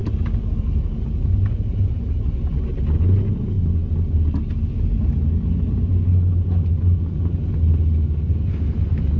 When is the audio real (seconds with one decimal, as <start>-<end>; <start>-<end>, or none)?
2.2-9.2